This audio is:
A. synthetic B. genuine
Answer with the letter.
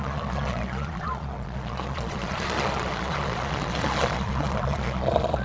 A